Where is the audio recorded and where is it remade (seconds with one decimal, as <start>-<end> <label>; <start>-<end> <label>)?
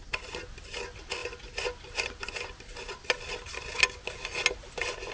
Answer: 0.0-5.1 recorded